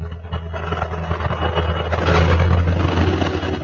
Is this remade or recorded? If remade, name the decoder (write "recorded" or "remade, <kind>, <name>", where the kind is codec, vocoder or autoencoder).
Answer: recorded